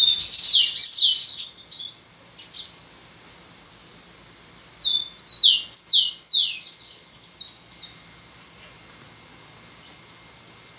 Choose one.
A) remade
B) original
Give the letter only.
B